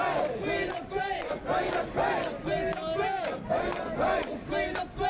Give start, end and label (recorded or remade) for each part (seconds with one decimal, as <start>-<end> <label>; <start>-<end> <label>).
0.0-5.1 recorded